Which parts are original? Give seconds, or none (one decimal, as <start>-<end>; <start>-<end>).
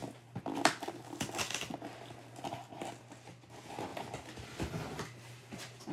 0.0-5.9